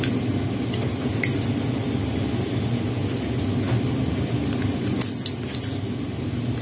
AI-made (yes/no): no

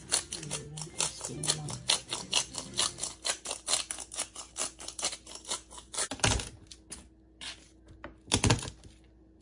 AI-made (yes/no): no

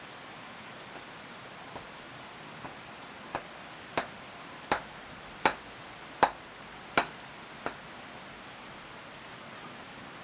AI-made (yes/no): no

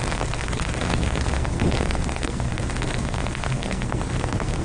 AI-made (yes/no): yes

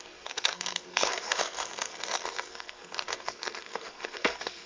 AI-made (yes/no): yes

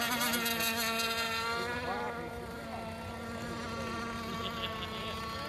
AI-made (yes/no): no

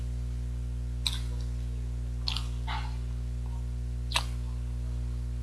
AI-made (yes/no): no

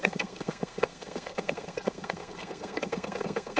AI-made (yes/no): yes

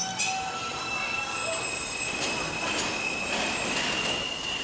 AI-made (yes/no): no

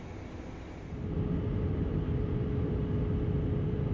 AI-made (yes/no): no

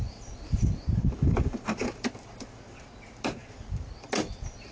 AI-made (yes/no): no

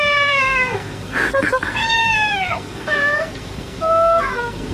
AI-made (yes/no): yes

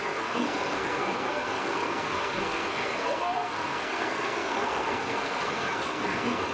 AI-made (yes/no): yes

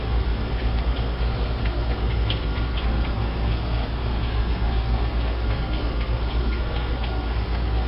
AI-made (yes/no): yes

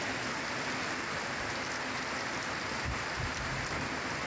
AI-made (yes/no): no